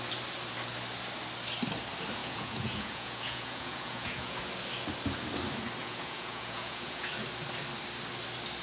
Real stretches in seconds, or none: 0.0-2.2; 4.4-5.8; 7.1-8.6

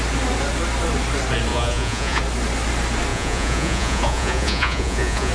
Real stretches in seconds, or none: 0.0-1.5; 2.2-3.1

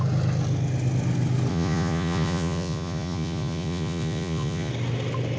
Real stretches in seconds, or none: 0.0-1.5; 4.7-5.4

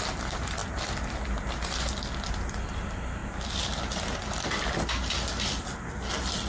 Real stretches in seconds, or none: 0.0-6.5

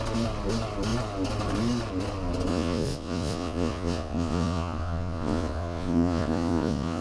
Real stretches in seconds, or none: 0.0-2.5